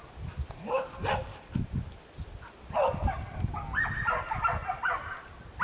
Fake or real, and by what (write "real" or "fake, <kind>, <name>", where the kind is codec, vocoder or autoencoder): real